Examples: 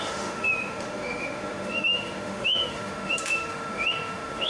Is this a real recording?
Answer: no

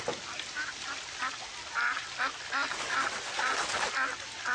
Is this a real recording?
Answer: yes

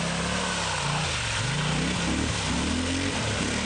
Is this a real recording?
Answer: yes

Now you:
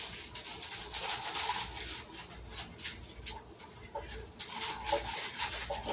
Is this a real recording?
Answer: yes